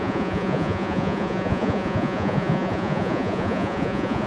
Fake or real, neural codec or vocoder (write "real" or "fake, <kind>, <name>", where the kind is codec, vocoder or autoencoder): fake, vocoder, Vocos